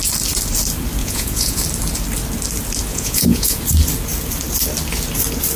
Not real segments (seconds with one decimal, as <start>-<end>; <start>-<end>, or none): 1.0-1.6; 2.9-3.6